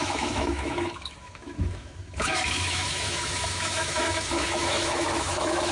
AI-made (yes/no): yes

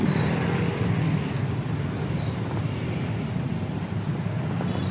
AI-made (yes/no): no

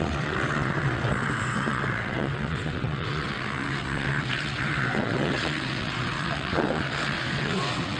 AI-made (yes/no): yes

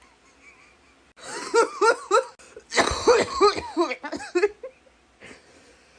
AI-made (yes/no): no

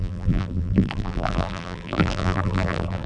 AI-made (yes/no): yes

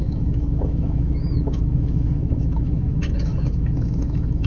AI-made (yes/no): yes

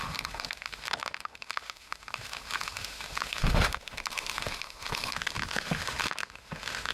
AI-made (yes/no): yes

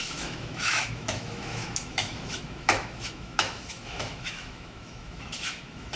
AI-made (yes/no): yes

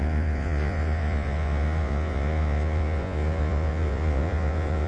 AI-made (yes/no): yes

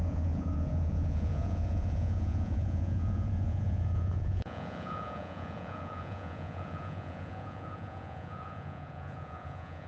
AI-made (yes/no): yes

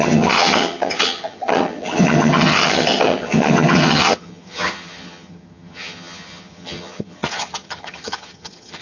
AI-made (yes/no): yes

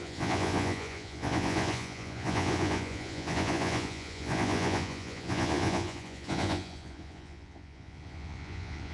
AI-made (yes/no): yes